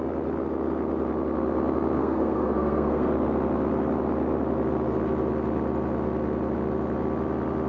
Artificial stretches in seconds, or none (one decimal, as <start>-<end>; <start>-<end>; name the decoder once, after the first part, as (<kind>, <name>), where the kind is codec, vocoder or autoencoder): 2.0-3.1 (codec, SNAC)